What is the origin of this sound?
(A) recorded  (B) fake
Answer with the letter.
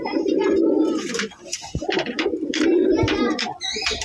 B